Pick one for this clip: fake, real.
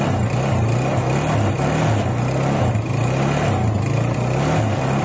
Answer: real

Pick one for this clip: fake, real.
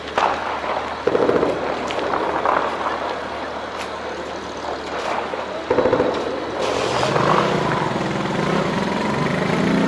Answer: real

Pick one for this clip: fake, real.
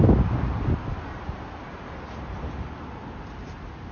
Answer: real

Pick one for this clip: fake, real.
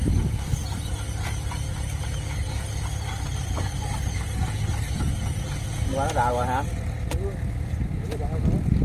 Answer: real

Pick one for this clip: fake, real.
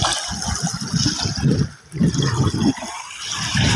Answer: real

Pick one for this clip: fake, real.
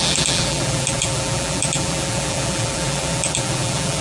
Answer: fake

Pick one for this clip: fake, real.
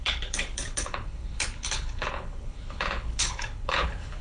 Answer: fake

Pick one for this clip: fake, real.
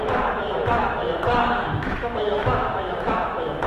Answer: fake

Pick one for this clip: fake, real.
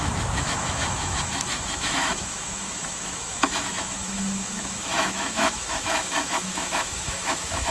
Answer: fake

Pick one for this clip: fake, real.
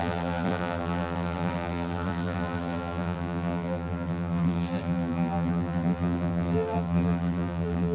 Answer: fake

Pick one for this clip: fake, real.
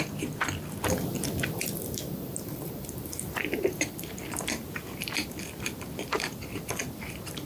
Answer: fake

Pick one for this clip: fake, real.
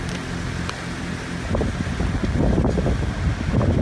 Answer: real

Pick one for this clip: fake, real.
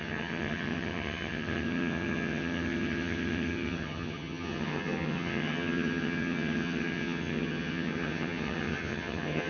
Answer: fake